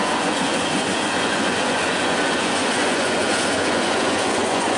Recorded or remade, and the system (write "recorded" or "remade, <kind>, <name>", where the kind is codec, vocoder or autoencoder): remade, vocoder, Vocos